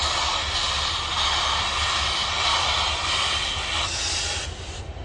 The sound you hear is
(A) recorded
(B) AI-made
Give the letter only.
A